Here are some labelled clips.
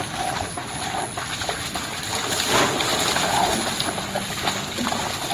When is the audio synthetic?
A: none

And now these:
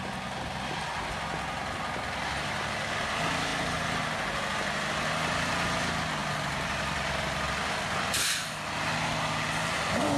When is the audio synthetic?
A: 6.2-7.4 (vocoder, BigVGAN v2)

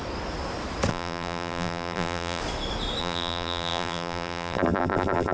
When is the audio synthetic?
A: 0.9-2.4 (vocoder, BigVGAN v2); 3.0-5.3